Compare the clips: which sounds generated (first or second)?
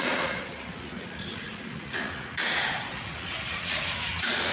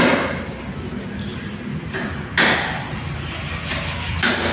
first